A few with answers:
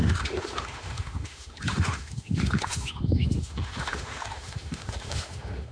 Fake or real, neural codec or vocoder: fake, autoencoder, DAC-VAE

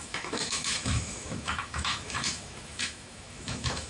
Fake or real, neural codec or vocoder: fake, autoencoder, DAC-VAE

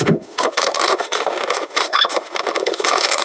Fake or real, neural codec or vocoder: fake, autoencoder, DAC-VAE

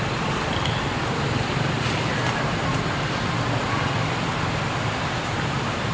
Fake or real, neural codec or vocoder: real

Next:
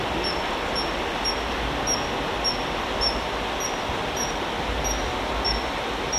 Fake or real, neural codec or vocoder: real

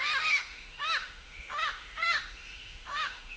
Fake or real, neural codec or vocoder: fake, autoencoder, DAC-VAE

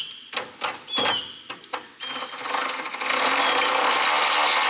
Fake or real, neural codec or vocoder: real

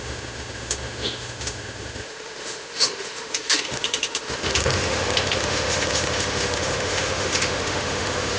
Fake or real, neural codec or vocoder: fake, autoencoder, DAC-VAE